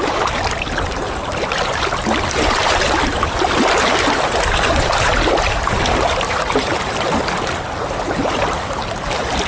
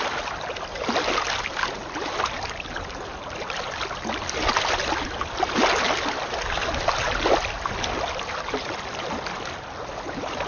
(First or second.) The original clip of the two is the second